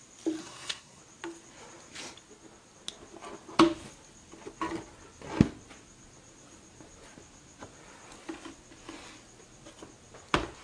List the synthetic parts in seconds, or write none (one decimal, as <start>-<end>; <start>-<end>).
0.4-1.0